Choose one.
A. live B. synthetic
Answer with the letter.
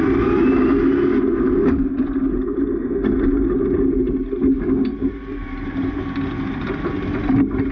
A